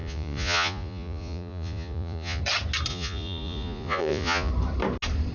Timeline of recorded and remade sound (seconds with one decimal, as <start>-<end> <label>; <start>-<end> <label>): 0.0-2.4 remade; 2.4-2.9 recorded; 2.9-4.5 remade; 4.5-5.3 recorded

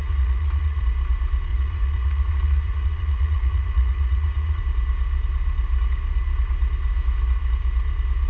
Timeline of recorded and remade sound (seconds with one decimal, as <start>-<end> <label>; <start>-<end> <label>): 0.0-0.8 remade; 0.8-1.5 recorded; 1.5-4.6 remade; 4.6-8.3 recorded

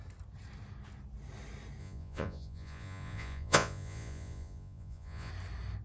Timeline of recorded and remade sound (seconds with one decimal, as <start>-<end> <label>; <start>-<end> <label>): 0.0-1.8 recorded; 1.8-5.3 remade; 5.3-5.8 recorded